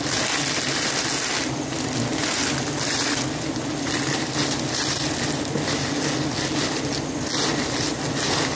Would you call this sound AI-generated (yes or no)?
no